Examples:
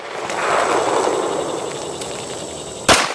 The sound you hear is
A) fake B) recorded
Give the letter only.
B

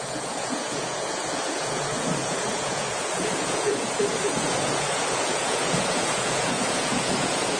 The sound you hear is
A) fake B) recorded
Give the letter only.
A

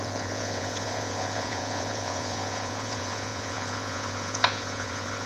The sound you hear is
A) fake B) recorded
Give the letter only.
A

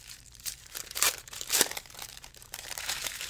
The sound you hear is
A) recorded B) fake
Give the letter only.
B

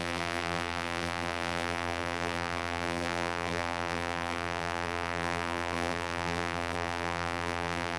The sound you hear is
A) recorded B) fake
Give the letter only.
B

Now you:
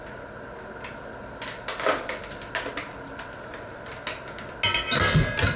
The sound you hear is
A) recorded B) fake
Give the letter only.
A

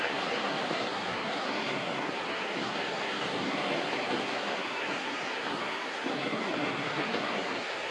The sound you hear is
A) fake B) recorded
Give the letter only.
A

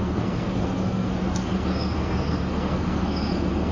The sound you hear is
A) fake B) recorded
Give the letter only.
A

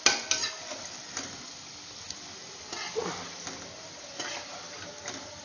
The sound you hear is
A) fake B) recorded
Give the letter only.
B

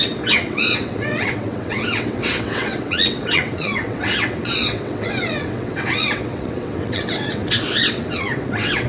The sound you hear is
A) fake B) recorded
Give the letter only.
A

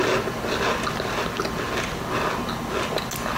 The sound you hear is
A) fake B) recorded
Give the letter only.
B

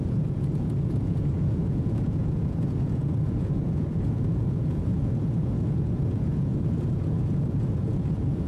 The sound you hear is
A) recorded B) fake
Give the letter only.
B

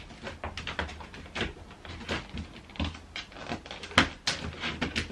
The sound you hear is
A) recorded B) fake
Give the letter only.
A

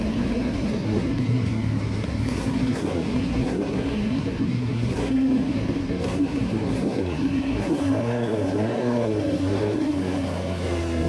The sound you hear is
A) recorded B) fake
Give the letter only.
B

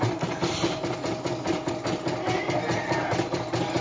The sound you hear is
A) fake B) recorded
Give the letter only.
B